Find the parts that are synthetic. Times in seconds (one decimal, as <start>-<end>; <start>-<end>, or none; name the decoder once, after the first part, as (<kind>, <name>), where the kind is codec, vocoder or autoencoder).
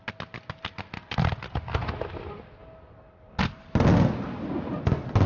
none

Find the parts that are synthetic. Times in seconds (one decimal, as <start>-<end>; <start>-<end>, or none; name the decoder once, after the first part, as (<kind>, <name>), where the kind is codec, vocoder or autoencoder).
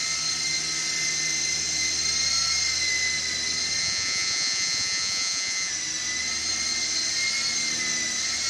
3.8-5.7 (vocoder, Vocos)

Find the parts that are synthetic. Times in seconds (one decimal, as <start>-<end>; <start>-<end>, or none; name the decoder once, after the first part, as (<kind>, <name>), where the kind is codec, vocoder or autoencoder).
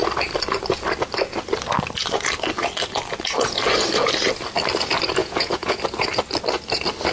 5.2-5.8 (vocoder, Vocos)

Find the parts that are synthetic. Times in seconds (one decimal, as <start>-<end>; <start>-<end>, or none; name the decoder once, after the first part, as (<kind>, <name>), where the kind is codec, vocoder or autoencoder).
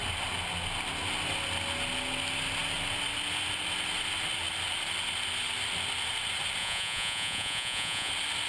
6.6-8.1 (vocoder, Vocos)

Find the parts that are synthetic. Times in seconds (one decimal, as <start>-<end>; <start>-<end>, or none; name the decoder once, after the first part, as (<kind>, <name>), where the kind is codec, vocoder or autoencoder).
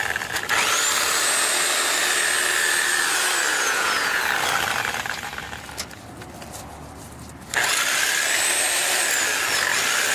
3.5-4.2 (vocoder, Vocos)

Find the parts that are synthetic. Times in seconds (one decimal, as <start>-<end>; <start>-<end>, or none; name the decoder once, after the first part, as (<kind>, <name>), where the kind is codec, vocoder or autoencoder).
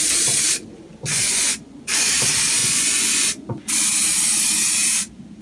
1.1-2.1 (vocoder, Vocos); 2.6-3.7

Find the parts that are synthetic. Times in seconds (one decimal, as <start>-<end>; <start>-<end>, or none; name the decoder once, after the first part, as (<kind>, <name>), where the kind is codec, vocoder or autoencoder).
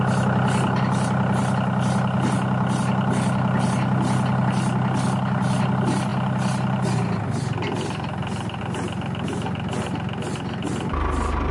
none